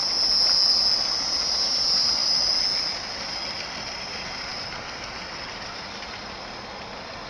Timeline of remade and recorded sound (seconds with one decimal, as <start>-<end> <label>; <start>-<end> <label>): 0.0-7.3 recorded